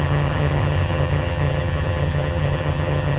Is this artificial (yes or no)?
yes